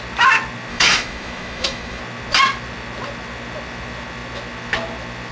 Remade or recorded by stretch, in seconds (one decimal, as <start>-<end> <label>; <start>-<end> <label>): 0.0-0.7 recorded; 0.7-2.0 remade; 2.0-5.3 recorded